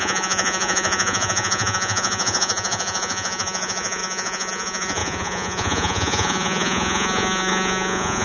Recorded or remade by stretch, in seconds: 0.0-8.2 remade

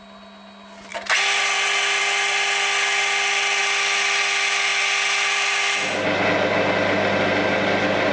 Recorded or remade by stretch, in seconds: 0.0-8.1 recorded

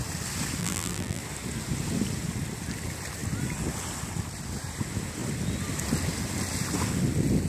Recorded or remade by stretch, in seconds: 0.0-0.6 recorded; 0.6-1.2 remade; 1.2-7.5 recorded

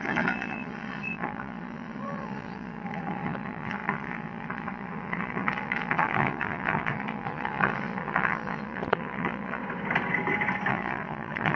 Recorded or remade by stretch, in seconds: 0.0-9.6 remade; 9.6-10.7 recorded; 10.7-11.6 remade

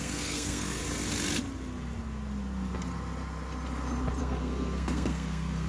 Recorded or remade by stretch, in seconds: 0.0-0.8 remade; 0.8-4.2 recorded; 4.2-5.7 remade

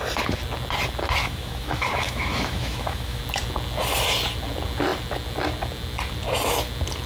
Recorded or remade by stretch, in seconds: 0.0-1.2 recorded; 1.2-3.2 remade; 3.2-7.1 recorded

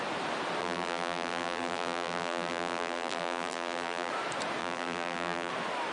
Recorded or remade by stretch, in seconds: 0.0-0.6 recorded; 0.6-4.1 remade; 4.1-4.6 recorded; 4.6-5.5 remade; 5.5-5.9 recorded

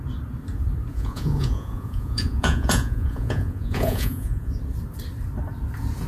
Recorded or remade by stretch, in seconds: 0.0-0.9 recorded; 0.9-4.6 remade; 4.6-6.1 recorded